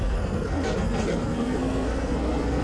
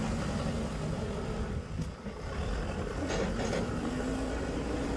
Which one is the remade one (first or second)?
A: first